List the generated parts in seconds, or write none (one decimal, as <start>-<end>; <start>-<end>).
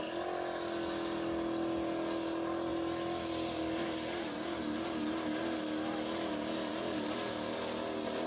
none